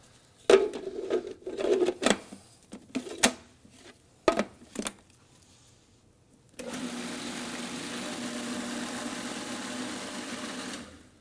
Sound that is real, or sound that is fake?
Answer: real